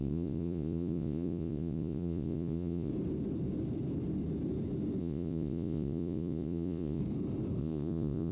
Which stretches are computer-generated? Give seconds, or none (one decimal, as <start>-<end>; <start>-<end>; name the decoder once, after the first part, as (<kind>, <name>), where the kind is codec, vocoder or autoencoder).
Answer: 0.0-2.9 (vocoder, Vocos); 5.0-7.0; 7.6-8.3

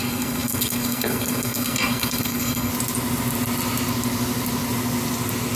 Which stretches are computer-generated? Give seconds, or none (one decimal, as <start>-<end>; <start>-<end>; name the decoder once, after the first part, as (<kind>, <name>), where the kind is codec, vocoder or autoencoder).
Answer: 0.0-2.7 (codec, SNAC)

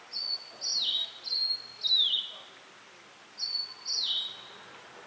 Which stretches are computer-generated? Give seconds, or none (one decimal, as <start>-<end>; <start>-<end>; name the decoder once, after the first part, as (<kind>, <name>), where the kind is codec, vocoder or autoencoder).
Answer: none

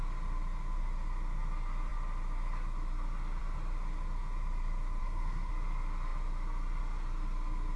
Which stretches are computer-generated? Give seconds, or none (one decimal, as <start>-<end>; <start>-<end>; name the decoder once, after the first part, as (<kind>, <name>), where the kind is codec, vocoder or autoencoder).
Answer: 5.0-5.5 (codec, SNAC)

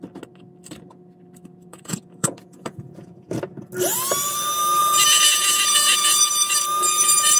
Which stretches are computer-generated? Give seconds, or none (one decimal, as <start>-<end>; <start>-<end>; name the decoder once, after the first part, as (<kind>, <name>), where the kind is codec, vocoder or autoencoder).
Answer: 1.7-3.3 (vocoder, Vocos); 4.8-6.3

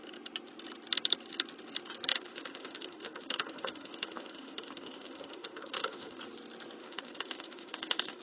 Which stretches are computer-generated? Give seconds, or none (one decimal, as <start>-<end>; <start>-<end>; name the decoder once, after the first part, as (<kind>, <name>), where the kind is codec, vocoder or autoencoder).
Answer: 2.1-6.2 (autoencoder, DAC-VAE); 6.8-8.2